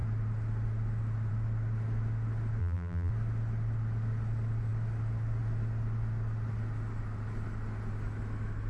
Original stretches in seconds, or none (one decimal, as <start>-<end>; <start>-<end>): 0.0-2.6; 3.1-8.7